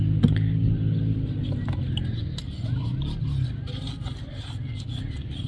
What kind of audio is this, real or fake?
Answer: real